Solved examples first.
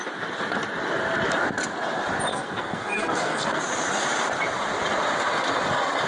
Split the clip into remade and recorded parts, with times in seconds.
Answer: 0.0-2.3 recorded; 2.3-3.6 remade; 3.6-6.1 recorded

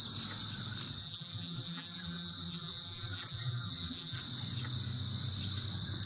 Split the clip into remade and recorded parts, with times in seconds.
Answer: 0.0-1.0 recorded; 1.0-4.2 remade; 4.2-6.1 recorded

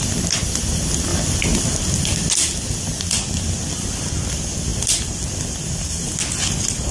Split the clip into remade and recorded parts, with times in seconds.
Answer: 0.0-6.9 recorded

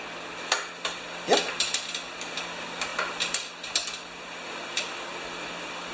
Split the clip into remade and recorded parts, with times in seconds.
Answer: 0.0-5.9 recorded

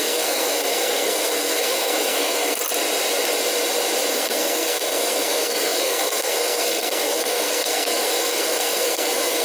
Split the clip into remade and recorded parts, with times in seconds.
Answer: 0.0-2.6 remade; 2.6-4.1 recorded; 4.1-9.4 remade

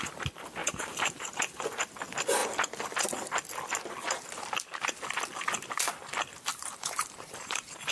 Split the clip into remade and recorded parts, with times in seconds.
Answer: 0.0-0.6 recorded; 0.6-2.0 remade; 2.0-6.5 recorded; 6.5-7.9 remade

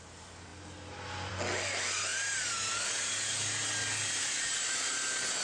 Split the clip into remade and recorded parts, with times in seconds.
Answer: 0.0-5.4 recorded